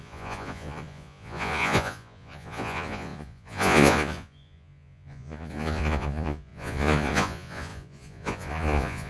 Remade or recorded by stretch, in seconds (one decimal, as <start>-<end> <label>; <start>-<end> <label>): 0.0-9.1 remade